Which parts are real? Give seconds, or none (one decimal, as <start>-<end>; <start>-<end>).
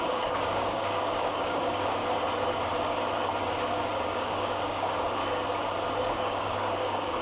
2.0-3.7; 5.2-6.1